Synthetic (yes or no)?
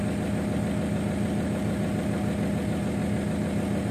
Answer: no